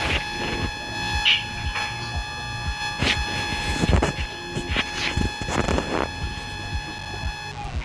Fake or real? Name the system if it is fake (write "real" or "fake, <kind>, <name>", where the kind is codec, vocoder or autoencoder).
real